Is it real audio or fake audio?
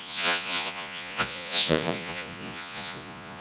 fake